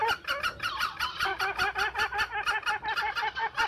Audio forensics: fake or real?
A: real